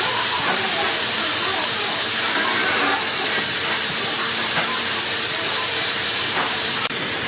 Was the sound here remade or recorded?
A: remade